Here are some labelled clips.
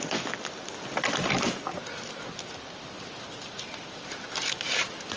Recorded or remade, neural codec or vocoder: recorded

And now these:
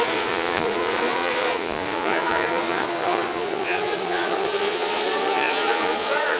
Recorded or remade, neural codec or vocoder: remade, vocoder, Vocos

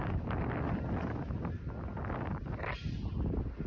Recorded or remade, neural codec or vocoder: recorded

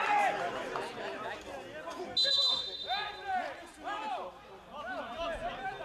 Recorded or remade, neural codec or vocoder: recorded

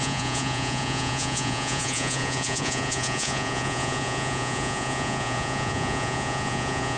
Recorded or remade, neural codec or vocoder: remade, vocoder, Vocos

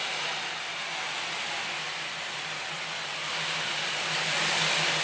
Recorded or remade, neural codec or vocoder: recorded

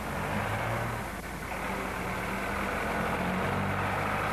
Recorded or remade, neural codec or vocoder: recorded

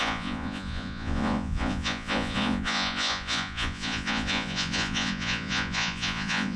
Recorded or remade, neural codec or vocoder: remade, vocoder, Vocos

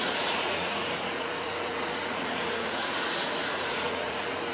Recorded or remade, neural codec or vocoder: remade, vocoder, Vocos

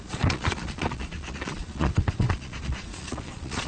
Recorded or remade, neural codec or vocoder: remade, vocoder, Vocos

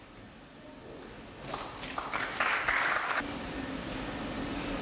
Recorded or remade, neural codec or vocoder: recorded